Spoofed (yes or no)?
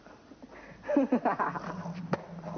no